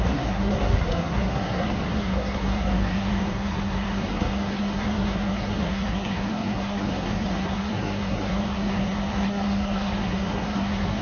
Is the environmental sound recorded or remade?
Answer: remade